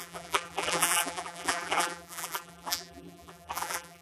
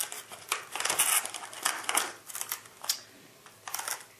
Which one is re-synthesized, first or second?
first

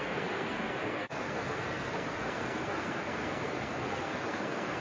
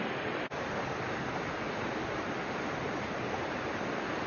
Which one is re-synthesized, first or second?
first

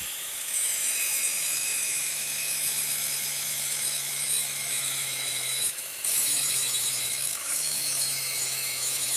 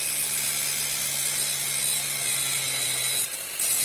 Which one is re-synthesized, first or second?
first